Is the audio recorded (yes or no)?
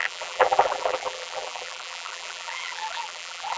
no